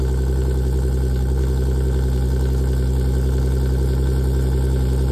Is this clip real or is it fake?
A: real